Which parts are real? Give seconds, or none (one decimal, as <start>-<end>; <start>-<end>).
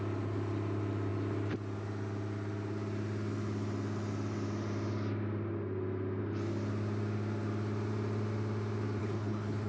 0.0-9.0